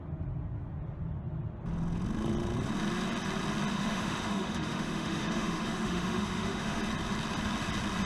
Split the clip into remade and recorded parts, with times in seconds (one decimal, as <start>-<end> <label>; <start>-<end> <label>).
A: 0.0-3.7 recorded; 3.7-6.8 remade; 6.8-8.1 recorded